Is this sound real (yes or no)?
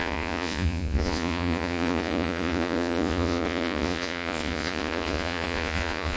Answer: no